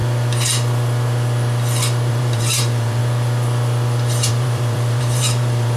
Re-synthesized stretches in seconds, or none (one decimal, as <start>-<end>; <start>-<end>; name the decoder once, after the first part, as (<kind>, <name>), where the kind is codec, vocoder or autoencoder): 2.1-3.0 (vocoder, BigVGAN v2); 4.3-5.8